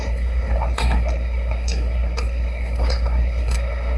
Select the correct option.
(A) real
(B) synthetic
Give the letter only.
B